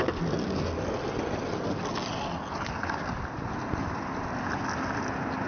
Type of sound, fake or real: real